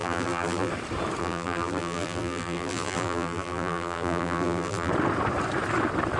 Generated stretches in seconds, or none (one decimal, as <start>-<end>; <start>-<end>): 0.0-0.7; 1.2-4.9